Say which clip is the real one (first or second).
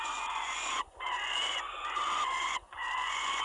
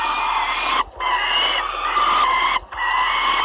second